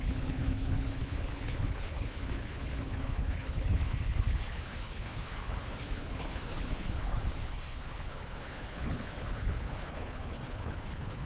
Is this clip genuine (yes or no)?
no